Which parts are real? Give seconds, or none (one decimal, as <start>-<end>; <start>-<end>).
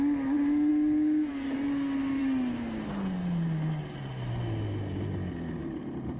0.0-6.2